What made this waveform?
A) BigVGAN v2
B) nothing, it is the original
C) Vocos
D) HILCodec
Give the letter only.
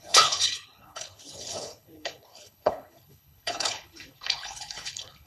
D